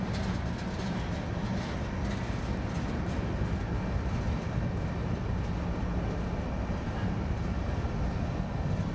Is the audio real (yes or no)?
yes